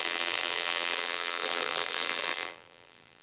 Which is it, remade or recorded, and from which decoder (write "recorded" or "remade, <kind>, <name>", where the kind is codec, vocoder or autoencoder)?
remade, vocoder, BigVGAN v2